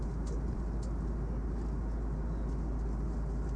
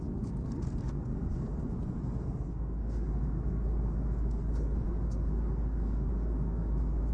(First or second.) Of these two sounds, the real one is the first